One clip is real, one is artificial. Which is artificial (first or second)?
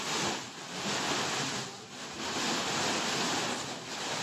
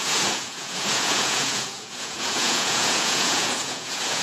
second